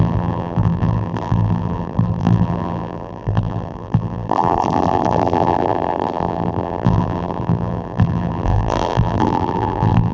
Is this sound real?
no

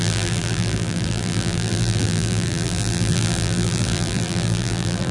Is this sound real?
no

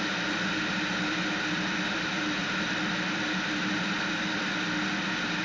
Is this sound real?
yes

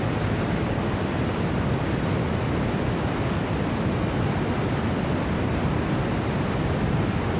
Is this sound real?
no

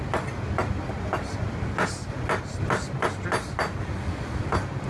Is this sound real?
yes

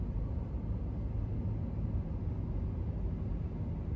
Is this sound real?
yes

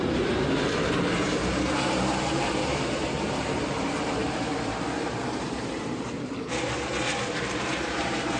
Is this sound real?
no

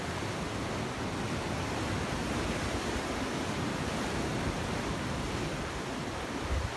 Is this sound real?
yes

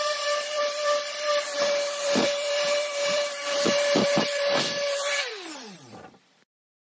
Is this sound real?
no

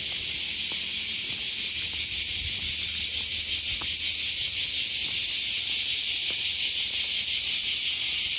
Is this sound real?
yes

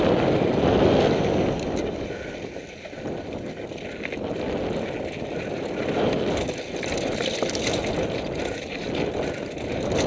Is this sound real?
yes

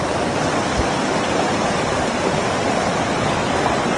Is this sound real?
no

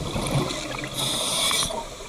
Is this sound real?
yes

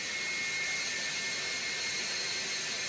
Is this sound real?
yes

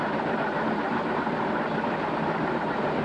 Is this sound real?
yes